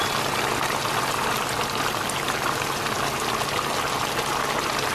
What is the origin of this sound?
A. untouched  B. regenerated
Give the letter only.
A